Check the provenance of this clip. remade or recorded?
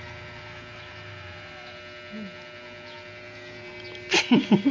recorded